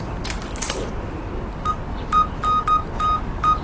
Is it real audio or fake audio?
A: real